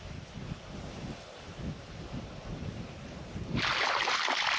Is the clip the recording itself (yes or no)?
yes